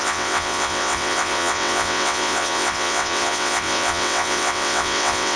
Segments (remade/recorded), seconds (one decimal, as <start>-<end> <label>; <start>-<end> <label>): 0.0-5.4 remade